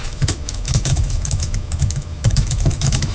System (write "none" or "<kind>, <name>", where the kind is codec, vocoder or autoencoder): autoencoder, DAC-VAE